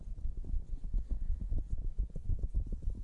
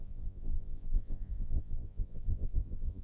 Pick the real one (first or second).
first